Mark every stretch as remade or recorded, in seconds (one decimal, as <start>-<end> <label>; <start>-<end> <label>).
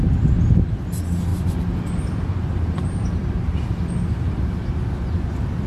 0.0-1.3 recorded; 1.3-4.7 remade; 4.7-5.7 recorded